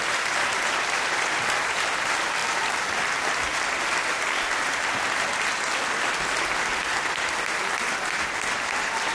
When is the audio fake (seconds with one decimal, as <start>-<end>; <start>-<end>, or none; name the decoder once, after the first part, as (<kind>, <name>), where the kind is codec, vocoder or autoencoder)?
none